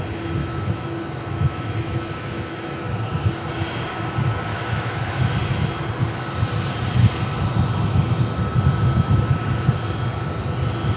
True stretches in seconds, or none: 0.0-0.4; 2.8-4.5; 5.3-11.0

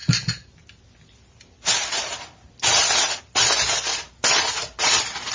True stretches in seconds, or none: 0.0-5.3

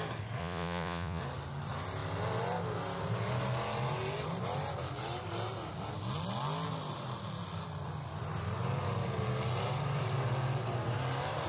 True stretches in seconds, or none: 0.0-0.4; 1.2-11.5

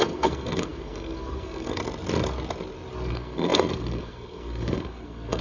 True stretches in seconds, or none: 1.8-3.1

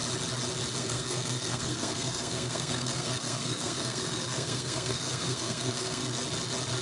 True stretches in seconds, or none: 0.0-0.8; 6.0-6.8

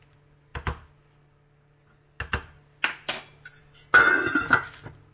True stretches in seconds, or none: 0.0-5.1

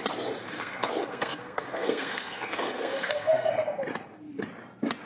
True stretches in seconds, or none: 0.0-0.4; 3.5-5.1

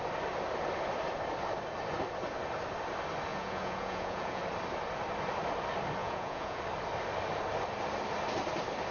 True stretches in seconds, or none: 0.0-3.3; 4.4-6.0; 6.6-8.9